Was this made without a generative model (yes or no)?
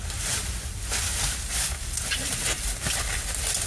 no